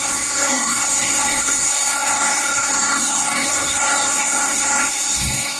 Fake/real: fake